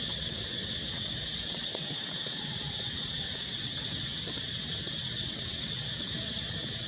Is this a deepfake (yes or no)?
yes